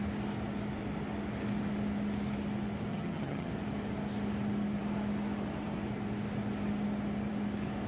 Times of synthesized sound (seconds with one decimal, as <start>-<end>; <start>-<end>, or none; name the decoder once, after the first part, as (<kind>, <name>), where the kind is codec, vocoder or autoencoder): 2.9-3.5 (vocoder, HiFi-GAN)